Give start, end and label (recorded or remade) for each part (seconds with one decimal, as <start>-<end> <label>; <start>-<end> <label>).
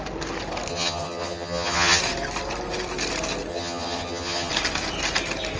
0.0-0.7 recorded; 0.7-2.0 remade; 2.0-3.5 recorded; 3.5-4.5 remade; 4.5-5.6 recorded